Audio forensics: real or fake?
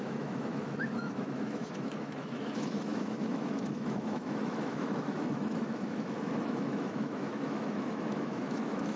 fake